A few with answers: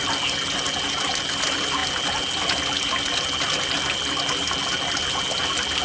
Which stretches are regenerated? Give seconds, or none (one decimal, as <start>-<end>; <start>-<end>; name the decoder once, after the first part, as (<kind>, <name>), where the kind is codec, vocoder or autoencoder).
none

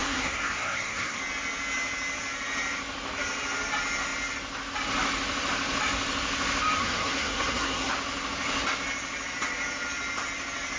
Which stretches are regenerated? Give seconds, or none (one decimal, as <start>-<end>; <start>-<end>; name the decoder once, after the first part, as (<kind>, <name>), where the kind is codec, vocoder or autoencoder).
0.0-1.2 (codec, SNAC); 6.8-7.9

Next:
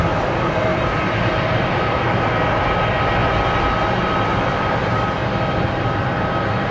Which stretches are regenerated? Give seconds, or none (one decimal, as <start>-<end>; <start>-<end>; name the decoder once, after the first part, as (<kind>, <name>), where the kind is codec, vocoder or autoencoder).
0.7-1.7 (vocoder, BigVGAN v2)

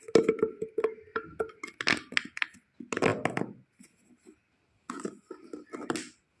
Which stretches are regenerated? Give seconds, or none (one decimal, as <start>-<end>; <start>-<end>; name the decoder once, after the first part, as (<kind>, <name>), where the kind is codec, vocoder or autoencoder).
none